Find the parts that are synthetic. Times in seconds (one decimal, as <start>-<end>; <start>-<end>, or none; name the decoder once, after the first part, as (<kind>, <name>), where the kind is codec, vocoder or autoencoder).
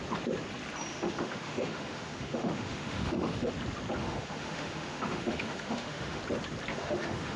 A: 0.9-3.5 (autoencoder, DAC-VAE); 4.0-6.2; 6.7-7.4